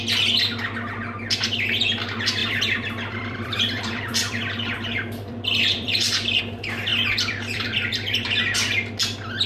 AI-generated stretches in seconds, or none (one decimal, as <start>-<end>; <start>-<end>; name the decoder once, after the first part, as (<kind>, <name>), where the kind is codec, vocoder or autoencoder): 2.4-6.4 (vocoder, BigVGAN v2); 6.9-8.4